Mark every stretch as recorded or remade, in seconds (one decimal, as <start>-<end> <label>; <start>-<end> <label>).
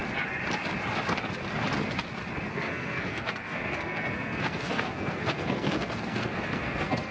0.0-2.5 recorded; 2.5-7.1 remade